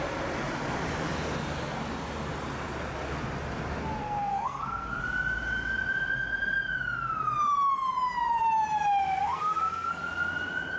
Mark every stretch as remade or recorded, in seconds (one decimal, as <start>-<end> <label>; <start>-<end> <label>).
0.0-4.0 recorded; 4.0-5.0 remade; 5.0-9.2 recorded; 9.2-10.0 remade; 10.0-10.8 recorded